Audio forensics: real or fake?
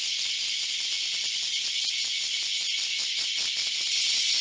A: real